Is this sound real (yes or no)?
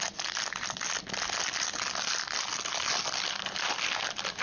yes